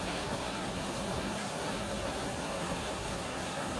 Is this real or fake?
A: fake